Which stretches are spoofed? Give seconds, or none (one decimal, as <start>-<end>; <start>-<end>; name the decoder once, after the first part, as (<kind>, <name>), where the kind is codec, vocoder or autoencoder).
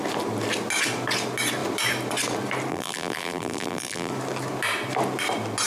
2.7-4.1 (vocoder, BigVGAN v2)